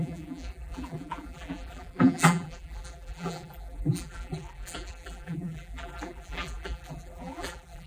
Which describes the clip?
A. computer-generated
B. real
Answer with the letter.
A